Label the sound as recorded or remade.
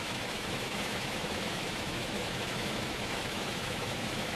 remade